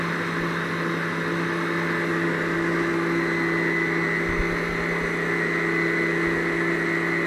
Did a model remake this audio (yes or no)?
no